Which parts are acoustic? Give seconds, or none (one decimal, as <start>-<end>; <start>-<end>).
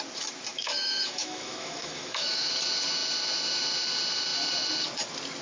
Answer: 0.0-0.5; 2.5-5.4